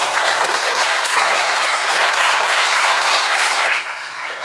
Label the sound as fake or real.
fake